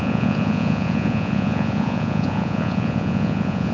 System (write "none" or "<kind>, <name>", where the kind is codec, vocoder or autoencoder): vocoder, Vocos